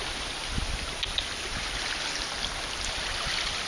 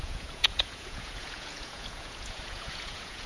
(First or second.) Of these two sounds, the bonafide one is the first